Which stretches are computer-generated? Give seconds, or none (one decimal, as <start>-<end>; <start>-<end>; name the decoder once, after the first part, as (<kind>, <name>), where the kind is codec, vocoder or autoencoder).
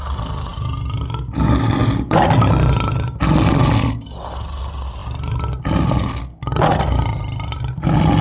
none